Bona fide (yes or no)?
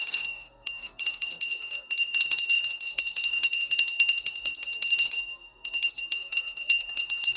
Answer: no